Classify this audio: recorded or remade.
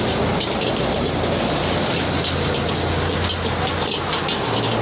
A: recorded